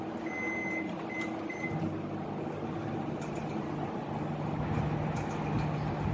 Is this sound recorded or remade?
recorded